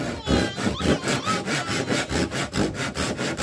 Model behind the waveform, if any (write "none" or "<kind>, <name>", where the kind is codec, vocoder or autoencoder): none